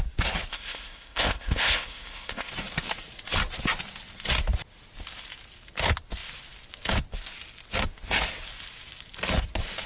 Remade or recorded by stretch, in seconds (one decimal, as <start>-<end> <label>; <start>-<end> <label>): 0.0-0.5 recorded; 0.5-2.5 remade; 2.5-9.9 recorded